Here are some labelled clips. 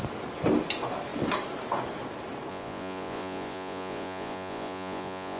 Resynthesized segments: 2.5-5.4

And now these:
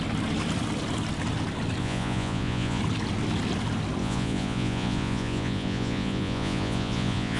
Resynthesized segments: 1.8-2.8; 4.0-7.4

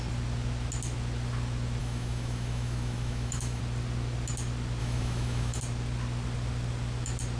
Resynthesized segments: 1.8-3.6; 4.8-5.6

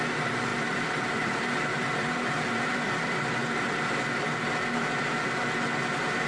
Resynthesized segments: 0.0-3.4

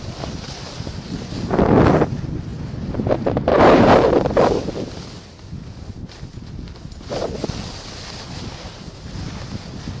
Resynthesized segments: none